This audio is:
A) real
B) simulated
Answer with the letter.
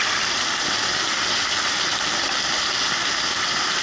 A